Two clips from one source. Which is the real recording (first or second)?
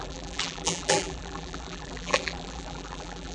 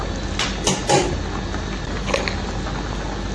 second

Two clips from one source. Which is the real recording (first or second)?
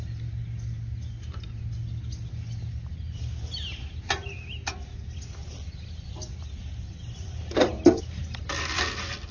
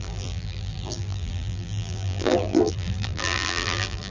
first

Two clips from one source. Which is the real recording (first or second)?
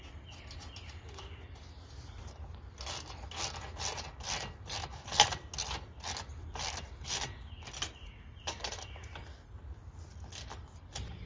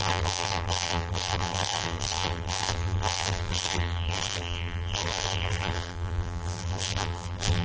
first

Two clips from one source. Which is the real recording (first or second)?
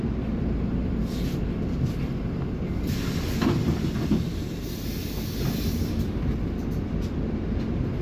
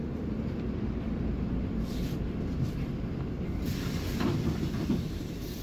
first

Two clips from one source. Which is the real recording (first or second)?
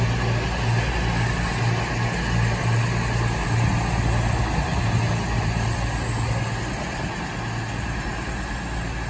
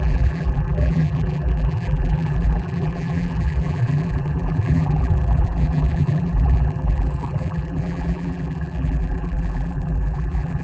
first